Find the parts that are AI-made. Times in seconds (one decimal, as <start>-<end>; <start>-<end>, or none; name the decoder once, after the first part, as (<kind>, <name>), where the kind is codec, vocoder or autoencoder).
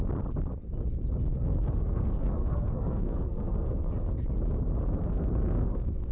1.3-3.9 (codec, SNAC); 5.0-6.1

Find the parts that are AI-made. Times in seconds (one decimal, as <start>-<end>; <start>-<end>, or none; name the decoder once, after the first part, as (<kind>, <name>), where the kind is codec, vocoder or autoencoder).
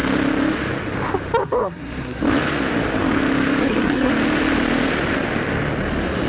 1.4-2.2 (codec, SNAC); 3.6-4.1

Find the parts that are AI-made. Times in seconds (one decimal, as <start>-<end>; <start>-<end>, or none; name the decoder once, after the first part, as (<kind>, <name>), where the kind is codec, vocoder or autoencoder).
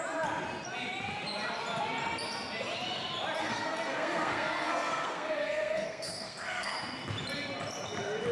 3.4-6.7 (codec, SNAC)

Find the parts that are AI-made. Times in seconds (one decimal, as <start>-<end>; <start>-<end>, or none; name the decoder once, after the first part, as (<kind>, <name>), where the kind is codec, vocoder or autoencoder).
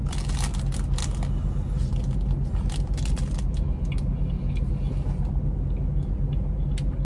none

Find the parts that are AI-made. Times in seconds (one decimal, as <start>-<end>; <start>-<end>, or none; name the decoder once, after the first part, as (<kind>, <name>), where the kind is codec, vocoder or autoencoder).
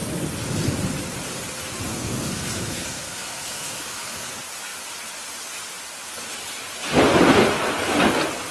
1.9-4.3 (codec, SNAC)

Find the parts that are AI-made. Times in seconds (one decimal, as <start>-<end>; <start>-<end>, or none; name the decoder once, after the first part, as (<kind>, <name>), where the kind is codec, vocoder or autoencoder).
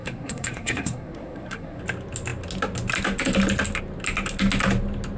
0.0-1.8 (codec, SNAC)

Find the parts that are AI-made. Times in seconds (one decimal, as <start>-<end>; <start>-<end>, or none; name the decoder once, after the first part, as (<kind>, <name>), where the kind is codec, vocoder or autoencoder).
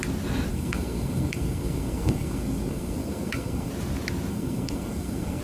0.5-3.7 (codec, SNAC); 4.3-5.4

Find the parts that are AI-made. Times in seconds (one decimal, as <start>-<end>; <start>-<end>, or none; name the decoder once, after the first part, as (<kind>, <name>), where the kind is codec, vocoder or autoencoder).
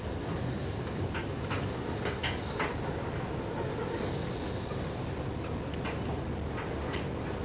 none